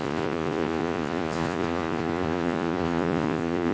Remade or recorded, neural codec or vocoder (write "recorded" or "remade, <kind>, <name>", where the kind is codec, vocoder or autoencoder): remade, vocoder, Vocos